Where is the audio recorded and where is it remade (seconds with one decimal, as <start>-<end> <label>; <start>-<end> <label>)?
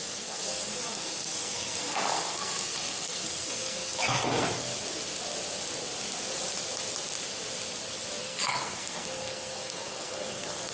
0.0-4.7 remade; 4.7-8.2 recorded; 8.2-10.7 remade